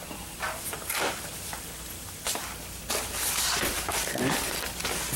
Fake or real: real